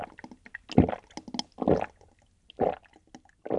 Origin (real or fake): real